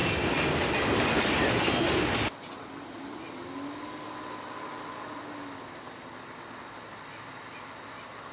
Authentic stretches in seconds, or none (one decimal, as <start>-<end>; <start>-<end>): 0.0-8.3